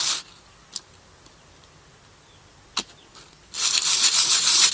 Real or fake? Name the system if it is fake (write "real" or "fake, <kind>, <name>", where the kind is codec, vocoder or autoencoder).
real